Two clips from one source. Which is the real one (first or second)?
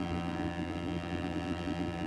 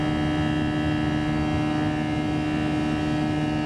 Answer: second